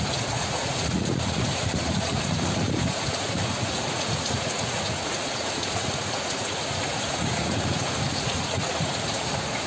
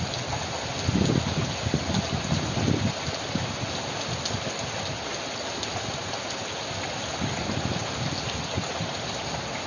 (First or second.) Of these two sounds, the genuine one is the second